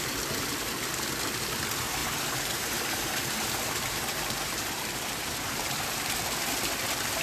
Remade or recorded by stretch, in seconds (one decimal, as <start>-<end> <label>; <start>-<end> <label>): 0.0-2.0 recorded; 2.0-6.0 remade; 6.0-7.2 recorded